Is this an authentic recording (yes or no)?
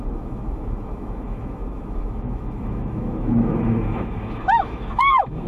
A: no